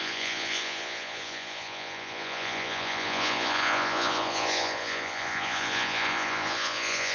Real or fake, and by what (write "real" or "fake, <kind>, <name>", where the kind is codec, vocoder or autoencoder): fake, vocoder, Vocos